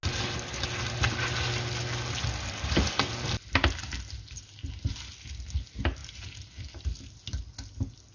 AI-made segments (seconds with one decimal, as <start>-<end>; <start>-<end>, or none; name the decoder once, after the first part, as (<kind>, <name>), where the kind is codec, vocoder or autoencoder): none